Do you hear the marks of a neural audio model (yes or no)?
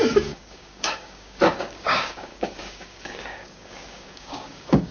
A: yes